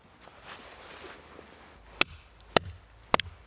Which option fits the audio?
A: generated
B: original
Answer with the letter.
B